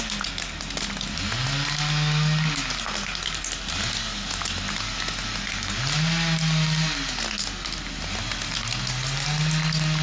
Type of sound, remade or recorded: recorded